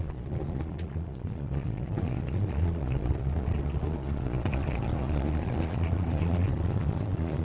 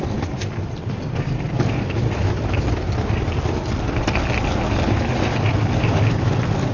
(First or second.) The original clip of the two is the second